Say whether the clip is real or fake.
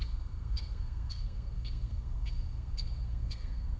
fake